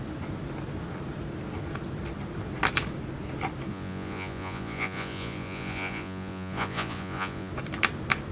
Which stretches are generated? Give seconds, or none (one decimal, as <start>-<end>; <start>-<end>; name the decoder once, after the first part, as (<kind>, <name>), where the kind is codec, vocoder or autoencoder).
3.7-7.5 (vocoder, Vocos)